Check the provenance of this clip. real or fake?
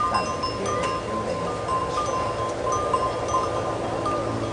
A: real